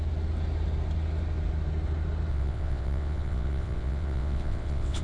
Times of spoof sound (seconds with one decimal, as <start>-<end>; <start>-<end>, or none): 2.3-5.0